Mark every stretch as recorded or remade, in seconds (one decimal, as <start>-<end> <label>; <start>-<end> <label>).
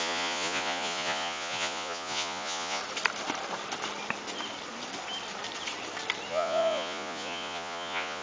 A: 0.0-2.8 remade; 2.8-6.3 recorded; 6.3-8.2 remade